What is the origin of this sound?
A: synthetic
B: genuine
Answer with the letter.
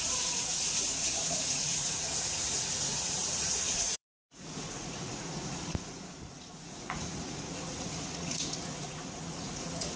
A